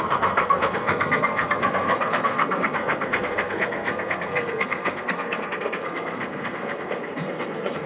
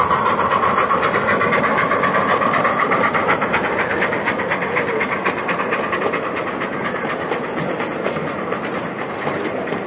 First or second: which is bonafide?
second